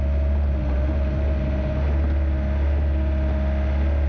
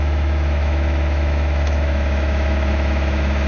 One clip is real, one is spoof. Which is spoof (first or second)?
second